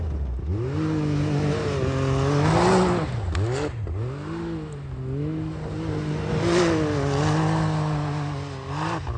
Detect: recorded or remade recorded